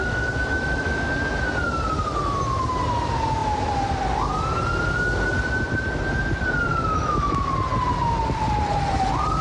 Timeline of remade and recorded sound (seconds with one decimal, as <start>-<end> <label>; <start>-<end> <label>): 0.0-1.1 remade; 1.1-6.7 recorded; 6.7-7.5 remade; 7.5-9.4 recorded